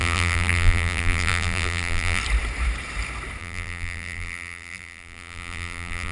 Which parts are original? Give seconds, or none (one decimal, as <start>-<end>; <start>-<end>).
2.2-3.4